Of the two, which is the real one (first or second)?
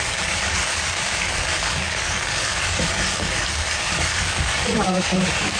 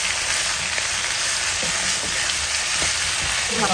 second